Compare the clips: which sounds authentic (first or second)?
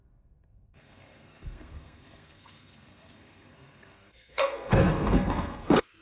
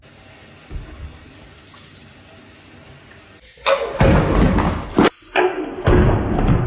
second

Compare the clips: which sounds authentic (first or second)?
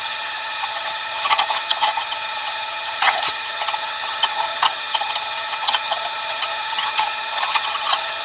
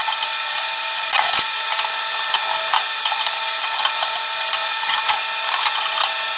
second